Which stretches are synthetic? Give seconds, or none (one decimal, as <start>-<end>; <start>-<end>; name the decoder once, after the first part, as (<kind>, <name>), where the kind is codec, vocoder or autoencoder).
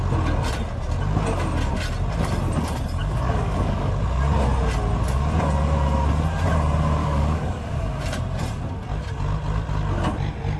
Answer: 3.0-3.9 (codec, DAC); 7.0-8.0